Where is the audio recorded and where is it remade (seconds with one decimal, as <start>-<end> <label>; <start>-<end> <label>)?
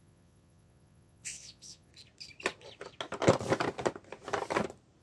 0.0-1.9 remade; 1.9-5.0 recorded